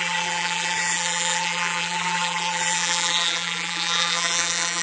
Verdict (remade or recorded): remade